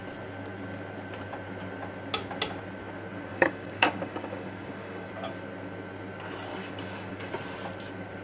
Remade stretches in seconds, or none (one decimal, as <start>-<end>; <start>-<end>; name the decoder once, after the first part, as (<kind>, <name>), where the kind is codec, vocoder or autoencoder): 3.3-5.1 (codec, DAC); 6.5-7.3